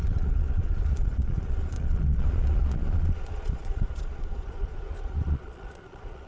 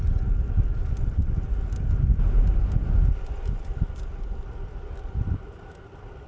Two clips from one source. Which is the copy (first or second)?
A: first